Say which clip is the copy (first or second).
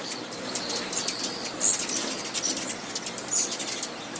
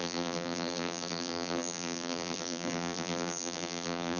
second